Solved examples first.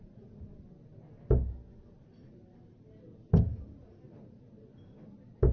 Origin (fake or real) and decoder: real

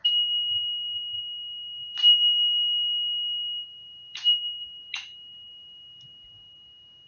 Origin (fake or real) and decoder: real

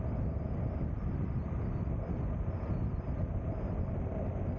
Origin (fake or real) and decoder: real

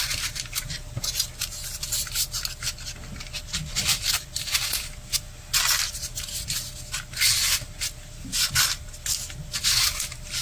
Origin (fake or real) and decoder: real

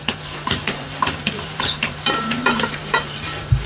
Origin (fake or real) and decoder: fake, vocoder, BigVGAN v2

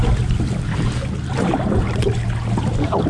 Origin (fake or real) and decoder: real